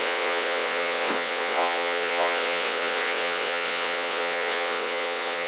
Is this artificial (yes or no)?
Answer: yes